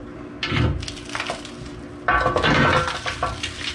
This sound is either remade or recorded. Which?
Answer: recorded